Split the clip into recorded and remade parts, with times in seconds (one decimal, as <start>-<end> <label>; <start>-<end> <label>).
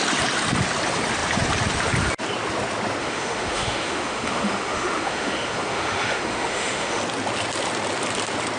0.0-3.0 recorded; 3.0-7.0 remade; 7.0-8.6 recorded